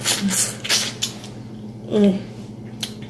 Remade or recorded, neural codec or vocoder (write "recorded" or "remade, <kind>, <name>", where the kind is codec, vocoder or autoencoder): recorded